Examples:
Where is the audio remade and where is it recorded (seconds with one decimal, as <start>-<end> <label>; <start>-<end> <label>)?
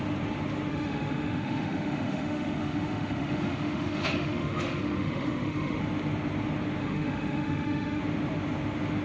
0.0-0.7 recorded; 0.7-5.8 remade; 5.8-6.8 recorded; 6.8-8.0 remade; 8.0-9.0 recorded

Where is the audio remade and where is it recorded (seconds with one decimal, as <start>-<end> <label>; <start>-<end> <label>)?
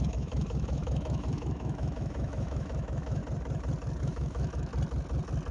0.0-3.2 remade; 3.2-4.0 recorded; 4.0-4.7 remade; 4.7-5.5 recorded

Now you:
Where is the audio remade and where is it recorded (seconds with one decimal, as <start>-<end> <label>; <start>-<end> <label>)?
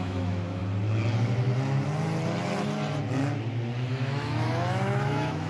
0.0-0.6 remade; 0.6-3.9 recorded; 3.9-5.5 remade